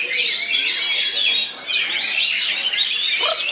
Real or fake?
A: real